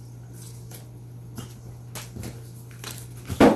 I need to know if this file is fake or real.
real